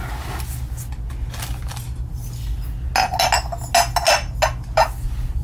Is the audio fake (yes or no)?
no